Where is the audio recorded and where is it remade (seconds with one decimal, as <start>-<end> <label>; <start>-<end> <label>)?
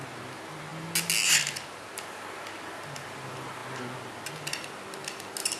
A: 0.0-5.6 recorded